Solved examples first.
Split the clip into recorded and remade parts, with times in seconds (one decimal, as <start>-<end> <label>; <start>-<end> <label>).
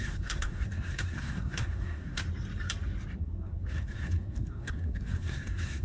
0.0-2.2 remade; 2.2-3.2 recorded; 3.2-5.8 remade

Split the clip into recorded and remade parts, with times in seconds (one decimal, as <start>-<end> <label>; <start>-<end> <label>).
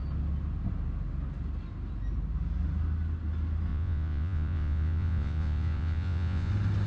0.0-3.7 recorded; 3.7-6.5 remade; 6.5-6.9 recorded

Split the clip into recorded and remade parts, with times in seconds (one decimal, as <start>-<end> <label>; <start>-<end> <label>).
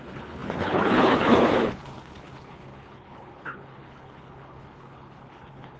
0.0-5.8 remade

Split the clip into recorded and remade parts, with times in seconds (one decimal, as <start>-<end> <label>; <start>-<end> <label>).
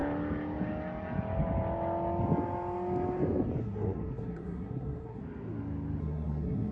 0.0-3.6 recorded; 3.6-5.2 remade; 5.2-6.0 recorded; 6.0-6.7 remade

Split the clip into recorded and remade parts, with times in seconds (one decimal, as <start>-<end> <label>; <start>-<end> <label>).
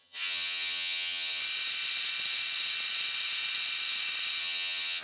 0.0-1.4 remade; 1.4-4.4 recorded; 4.4-5.0 remade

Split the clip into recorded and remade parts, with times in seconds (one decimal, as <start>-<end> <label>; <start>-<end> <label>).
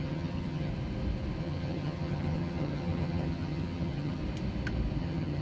0.0-0.7 remade; 0.7-1.4 recorded; 1.4-4.2 remade; 4.2-5.0 recorded; 5.0-5.4 remade